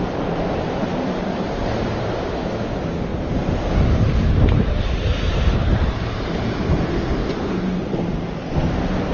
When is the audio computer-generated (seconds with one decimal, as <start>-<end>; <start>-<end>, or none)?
0.5-2.1; 3.1-6.7; 7.2-8.4